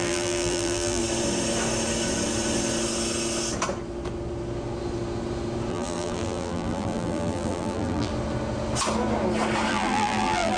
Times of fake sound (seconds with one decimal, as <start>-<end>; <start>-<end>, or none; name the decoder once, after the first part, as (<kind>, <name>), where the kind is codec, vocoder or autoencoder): 0.0-1.0 (vocoder, BigVGAN v2); 5.7-8.1; 9.7-10.6